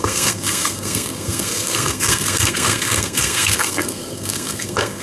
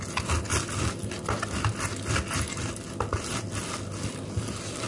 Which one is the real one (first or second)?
second